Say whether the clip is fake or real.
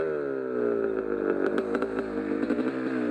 real